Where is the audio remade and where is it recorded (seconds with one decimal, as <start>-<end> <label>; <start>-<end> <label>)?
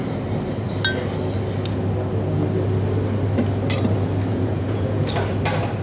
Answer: 0.0-4.3 recorded; 4.3-5.1 remade; 5.1-5.8 recorded